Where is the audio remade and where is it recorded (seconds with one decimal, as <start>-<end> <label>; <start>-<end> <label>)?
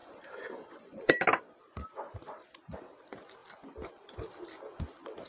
0.0-1.1 remade; 1.1-5.3 recorded